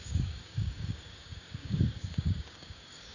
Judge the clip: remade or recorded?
remade